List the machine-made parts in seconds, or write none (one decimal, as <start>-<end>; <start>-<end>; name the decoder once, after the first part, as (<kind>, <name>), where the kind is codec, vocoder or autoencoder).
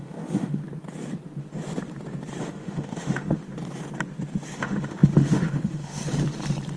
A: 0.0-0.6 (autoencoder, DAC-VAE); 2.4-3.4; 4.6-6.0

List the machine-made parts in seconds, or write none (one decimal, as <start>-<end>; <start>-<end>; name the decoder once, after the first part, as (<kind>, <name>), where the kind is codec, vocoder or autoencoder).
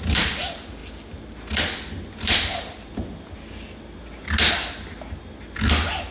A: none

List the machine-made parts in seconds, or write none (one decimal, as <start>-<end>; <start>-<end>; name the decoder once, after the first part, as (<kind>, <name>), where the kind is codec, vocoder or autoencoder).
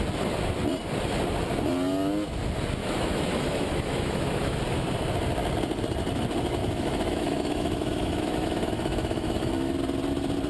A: 2.8-4.6 (autoencoder, DAC-VAE); 6.6-9.5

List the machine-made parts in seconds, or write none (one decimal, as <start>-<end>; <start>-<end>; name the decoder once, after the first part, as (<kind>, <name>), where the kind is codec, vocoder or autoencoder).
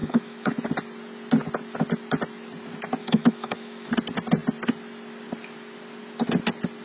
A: 0.0-0.5 (autoencoder, DAC-VAE); 3.0-3.9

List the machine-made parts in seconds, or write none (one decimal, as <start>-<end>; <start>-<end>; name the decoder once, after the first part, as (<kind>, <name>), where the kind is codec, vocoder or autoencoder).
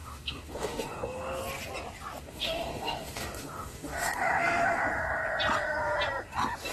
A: 0.0-1.4 (autoencoder, DAC-VAE); 2.2-4.8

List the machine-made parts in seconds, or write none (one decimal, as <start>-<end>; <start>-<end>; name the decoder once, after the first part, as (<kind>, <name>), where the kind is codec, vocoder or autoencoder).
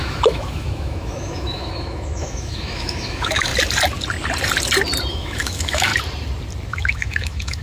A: 0.0-3.5 (autoencoder, DAC-VAE); 5.1-5.9; 6.7-7.6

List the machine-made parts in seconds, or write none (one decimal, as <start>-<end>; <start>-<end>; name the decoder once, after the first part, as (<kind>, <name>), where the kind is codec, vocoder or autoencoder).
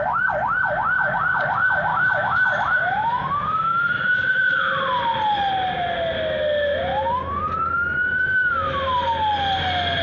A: 1.9-4.6 (autoencoder, DAC-VAE); 6.9-7.4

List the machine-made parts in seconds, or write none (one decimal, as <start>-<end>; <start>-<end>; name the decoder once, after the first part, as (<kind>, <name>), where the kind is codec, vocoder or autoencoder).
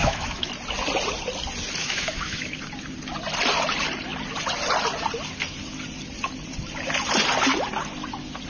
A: 0.0-0.5 (autoencoder, DAC-VAE); 1.8-2.6